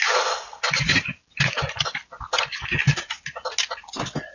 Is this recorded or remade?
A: recorded